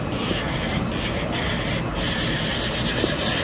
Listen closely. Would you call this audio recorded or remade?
recorded